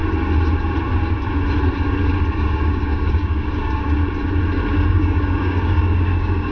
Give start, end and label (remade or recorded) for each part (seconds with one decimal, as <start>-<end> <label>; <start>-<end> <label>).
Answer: 0.0-2.3 recorded; 2.3-4.0 remade; 4.0-4.9 recorded; 4.9-6.5 remade